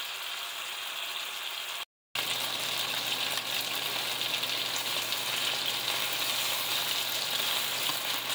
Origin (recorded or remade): recorded